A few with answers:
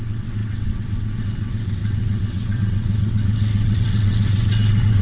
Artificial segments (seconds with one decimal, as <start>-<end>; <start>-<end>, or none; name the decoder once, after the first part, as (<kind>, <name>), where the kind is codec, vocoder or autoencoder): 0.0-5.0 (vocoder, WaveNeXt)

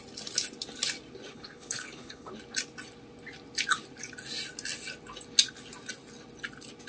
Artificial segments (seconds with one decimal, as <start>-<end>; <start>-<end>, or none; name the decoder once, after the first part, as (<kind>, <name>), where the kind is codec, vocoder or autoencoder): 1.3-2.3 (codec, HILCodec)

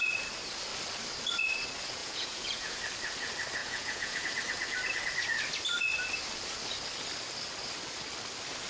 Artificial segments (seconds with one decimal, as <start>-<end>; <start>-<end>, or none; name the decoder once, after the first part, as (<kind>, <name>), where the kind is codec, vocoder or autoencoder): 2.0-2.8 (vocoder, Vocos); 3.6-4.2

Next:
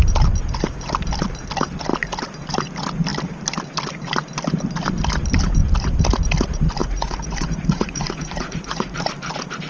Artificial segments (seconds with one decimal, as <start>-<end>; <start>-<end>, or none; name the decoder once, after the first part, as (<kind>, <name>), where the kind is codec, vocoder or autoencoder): 6.8-9.1 (vocoder, Vocos)